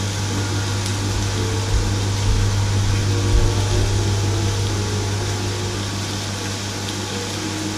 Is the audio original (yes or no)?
yes